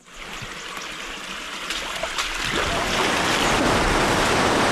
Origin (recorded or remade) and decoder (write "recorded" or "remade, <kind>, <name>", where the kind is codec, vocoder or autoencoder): recorded